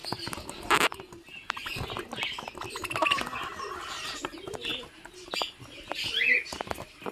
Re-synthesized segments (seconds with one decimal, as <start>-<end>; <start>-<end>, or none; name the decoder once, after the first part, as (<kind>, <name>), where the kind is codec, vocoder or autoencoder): none